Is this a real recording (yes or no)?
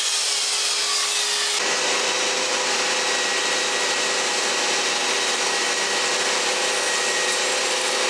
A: yes